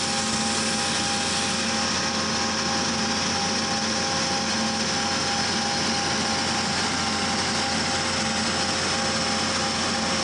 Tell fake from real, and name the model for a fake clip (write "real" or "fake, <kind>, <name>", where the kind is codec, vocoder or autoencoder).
real